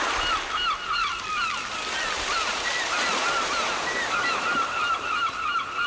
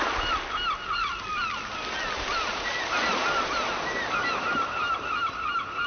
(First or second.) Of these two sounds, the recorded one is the second